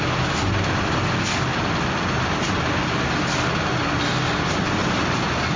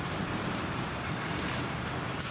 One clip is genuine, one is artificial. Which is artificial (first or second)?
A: second